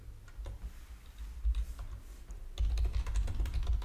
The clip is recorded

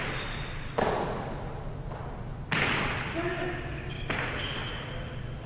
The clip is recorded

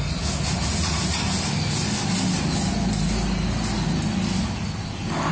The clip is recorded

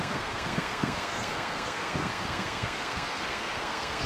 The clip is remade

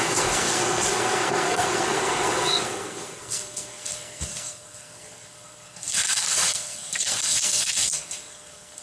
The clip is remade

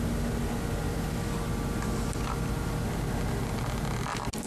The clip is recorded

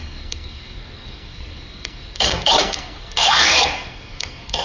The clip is remade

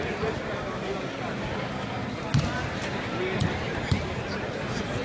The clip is recorded